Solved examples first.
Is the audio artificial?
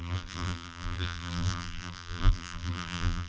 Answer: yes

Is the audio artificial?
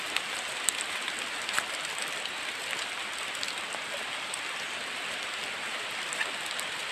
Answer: no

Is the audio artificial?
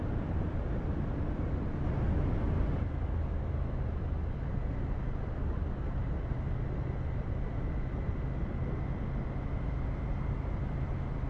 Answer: no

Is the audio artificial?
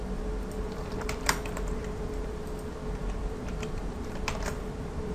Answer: yes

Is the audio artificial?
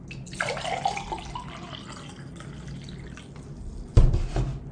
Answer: no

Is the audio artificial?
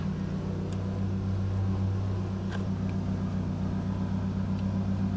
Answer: no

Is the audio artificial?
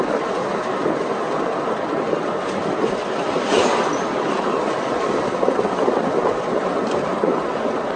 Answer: yes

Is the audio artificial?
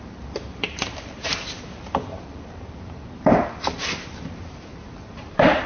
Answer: yes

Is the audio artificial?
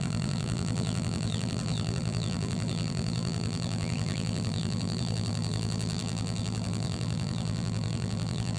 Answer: yes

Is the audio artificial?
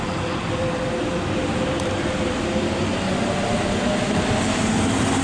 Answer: no